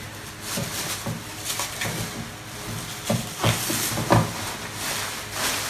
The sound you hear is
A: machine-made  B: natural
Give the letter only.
B